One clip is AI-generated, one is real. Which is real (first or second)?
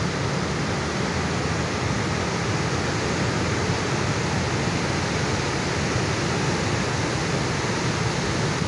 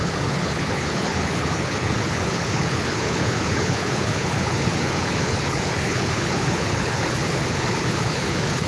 first